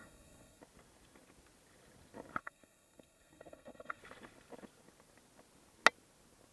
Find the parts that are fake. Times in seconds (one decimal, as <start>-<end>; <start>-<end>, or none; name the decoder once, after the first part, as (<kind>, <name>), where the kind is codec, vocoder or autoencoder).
0.0-0.6 (codec, SNAC); 2.4-4.0